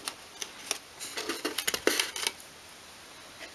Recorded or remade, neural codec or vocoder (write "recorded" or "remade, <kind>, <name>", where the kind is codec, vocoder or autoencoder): recorded